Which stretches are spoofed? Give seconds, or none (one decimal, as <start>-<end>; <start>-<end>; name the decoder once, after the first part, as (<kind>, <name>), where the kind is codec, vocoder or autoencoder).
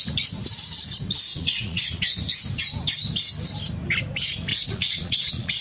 1.3-2.0 (vocoder, Vocos); 4.5-5.6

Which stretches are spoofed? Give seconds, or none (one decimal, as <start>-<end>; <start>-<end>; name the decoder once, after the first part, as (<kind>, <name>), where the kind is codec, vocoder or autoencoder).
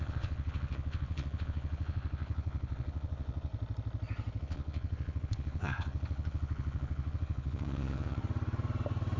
0.0-3.5 (vocoder, Vocos); 4.4-8.2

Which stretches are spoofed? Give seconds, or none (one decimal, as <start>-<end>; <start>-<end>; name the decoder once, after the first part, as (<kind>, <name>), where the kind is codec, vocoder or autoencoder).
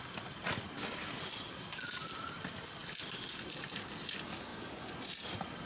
4.5-5.0 (vocoder, Vocos)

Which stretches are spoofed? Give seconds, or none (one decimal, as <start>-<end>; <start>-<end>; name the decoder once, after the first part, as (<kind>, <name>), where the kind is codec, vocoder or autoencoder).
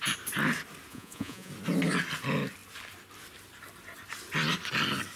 0.9-1.5 (vocoder, Vocos)